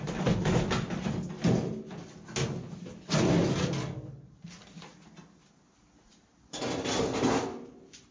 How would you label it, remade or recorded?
recorded